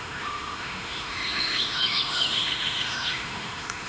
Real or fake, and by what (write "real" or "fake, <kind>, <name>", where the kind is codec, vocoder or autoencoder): fake, autoencoder, DAC-VAE